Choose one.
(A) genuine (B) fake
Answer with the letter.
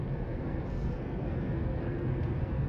B